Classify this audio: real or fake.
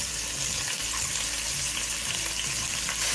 fake